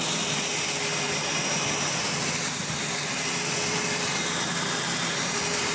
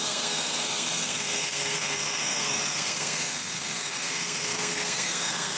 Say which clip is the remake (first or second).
second